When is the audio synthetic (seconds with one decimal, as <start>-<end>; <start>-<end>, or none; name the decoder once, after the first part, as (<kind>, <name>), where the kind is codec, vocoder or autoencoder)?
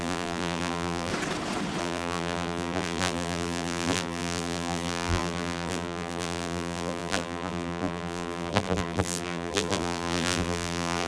0.0-1.1 (vocoder, BigVGAN v2); 1.8-11.1